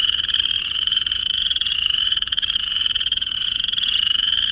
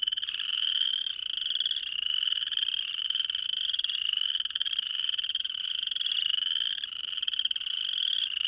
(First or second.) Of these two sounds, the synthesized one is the first